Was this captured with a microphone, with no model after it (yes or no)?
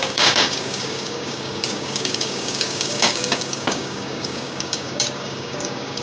no